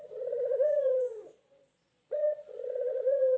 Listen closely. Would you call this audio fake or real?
fake